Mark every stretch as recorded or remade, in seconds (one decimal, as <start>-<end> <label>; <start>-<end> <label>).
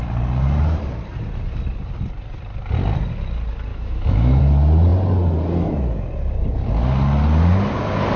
0.0-3.7 recorded; 3.7-4.4 remade; 4.4-8.2 recorded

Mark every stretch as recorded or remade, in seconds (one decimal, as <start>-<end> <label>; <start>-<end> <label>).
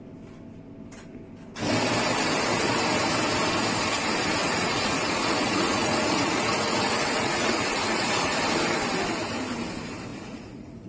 0.0-4.4 recorded; 4.4-8.4 remade; 8.4-10.1 recorded; 10.1-10.9 remade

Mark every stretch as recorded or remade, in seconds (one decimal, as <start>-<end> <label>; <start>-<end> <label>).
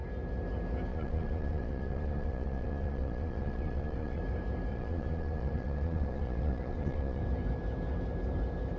0.0-0.9 recorded; 0.9-4.2 remade; 4.2-4.7 recorded; 4.7-7.2 remade; 7.2-8.8 recorded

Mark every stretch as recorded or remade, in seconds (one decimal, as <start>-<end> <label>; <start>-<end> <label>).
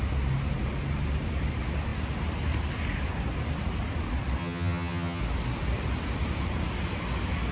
0.0-4.4 recorded; 4.4-5.2 remade; 5.2-7.5 recorded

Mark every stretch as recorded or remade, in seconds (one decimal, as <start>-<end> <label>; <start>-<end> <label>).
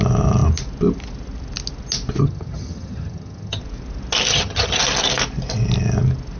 0.0-2.2 recorded; 2.2-3.6 remade; 3.6-4.3 recorded; 4.3-4.8 remade; 4.8-6.4 recorded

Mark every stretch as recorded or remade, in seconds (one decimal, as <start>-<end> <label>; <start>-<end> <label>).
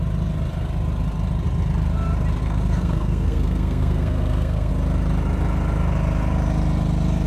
0.0-2.4 recorded; 2.4-4.7 remade; 4.7-7.3 recorded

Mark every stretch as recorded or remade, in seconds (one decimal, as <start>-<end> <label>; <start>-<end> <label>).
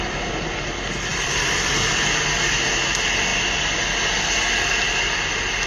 0.0-1.1 recorded; 1.1-1.9 remade; 1.9-5.7 recorded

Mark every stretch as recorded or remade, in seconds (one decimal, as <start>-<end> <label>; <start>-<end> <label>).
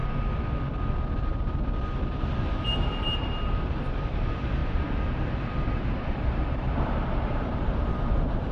0.0-2.7 recorded; 2.7-4.6 remade; 4.6-5.6 recorded; 5.6-8.5 remade